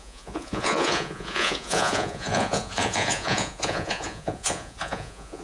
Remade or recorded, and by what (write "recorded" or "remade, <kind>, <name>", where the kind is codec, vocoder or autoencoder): remade, vocoder, Vocos